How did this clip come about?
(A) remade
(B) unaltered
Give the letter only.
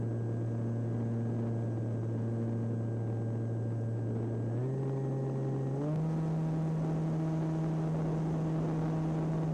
B